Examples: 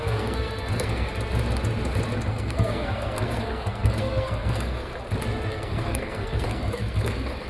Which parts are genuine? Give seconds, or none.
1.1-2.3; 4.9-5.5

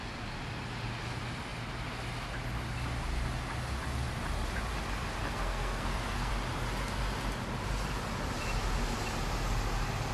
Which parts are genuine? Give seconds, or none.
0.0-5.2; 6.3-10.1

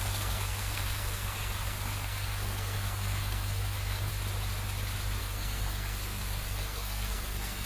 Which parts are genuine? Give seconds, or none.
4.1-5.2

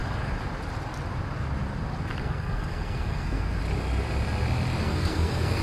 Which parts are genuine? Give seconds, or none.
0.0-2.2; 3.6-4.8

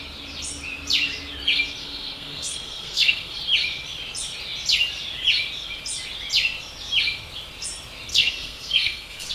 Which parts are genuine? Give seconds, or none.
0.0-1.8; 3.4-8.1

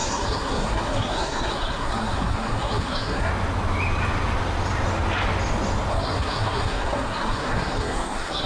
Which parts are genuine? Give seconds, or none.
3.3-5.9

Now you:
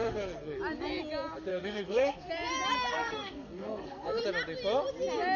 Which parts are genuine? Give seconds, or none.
0.6-1.5; 2.3-2.9; 4.2-5.4